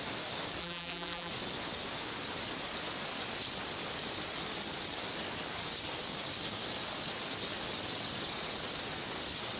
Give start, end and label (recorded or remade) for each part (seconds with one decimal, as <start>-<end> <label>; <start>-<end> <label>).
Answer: 0.0-0.6 recorded; 0.6-1.3 remade; 1.3-9.6 recorded